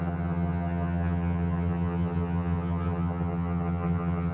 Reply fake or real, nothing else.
fake